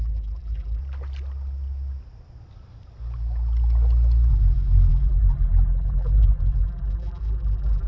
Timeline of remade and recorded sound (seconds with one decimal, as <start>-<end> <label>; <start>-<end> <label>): 0.0-0.8 remade; 0.8-4.3 recorded; 4.3-7.9 remade